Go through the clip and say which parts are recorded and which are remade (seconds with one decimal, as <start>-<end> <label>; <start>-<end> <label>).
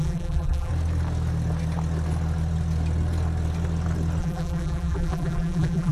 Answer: 0.0-0.7 remade; 0.7-4.2 recorded; 4.2-5.9 remade